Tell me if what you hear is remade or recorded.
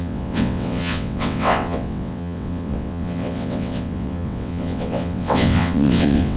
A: remade